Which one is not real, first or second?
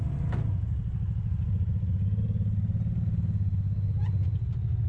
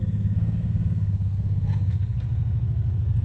second